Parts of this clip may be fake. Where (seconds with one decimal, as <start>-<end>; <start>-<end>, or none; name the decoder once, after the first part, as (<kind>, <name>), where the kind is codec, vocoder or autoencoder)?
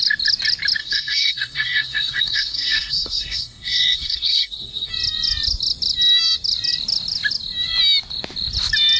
0.8-4.9 (codec, SNAC)